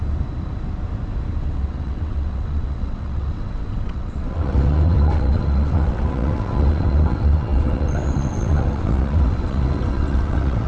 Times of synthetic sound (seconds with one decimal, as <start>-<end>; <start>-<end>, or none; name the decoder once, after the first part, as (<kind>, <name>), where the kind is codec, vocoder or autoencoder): 1.4-10.7 (vocoder, WaveNeXt)